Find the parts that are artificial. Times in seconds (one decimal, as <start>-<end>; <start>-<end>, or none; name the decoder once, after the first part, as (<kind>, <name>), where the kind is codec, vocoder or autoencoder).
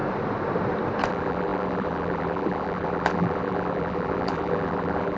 1.1-5.2 (vocoder, BigVGAN v2)